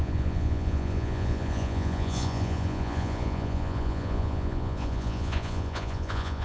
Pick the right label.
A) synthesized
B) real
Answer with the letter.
A